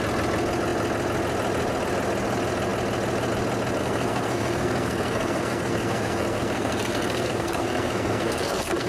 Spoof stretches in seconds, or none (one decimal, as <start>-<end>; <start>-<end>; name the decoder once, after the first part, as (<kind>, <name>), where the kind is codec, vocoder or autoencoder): 3.8-8.9 (codec, SNAC)